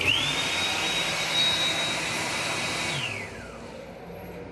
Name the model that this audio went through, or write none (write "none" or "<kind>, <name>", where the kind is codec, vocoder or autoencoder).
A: none